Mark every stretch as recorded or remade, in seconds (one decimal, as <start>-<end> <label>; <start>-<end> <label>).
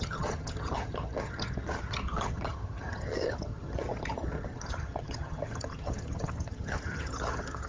0.0-7.7 remade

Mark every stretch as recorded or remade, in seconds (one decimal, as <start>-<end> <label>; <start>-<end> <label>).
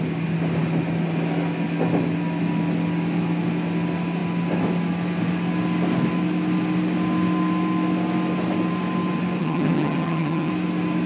0.0-9.4 recorded; 9.4-10.5 remade; 10.5-11.1 recorded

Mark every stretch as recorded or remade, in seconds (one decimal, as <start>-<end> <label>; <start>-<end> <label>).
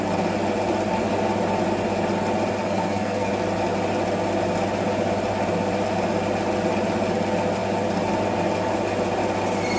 0.0-2.6 recorded; 2.6-3.3 remade; 3.3-9.8 recorded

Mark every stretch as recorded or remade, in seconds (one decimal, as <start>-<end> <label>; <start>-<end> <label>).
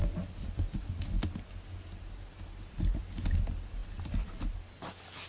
0.0-1.2 remade; 1.2-3.8 recorded; 3.8-5.3 remade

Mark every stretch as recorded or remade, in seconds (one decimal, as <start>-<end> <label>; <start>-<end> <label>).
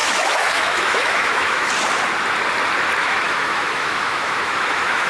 0.0-1.7 remade; 1.7-3.0 recorded; 3.0-5.1 remade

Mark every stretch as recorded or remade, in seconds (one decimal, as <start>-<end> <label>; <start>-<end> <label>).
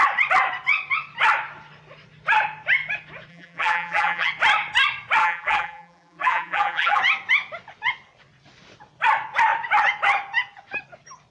0.0-3.3 recorded; 3.3-4.3 remade; 4.3-5.2 recorded; 5.2-7.0 remade; 7.0-11.3 recorded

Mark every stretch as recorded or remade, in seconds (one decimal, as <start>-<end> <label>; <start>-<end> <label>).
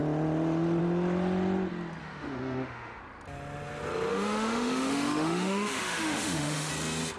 0.0-2.0 recorded; 2.0-3.0 remade; 3.0-4.1 recorded; 4.1-6.7 remade; 6.7-7.2 recorded